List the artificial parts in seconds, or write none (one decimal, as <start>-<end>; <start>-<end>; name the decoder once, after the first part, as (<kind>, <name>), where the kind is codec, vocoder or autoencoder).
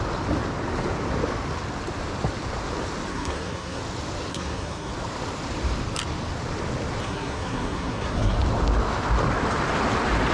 3.1-3.8 (codec, SNAC); 4.3-4.9; 7.0-8.4